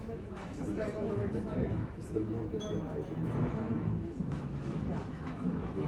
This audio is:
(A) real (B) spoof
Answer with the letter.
B